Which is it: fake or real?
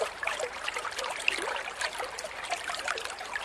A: fake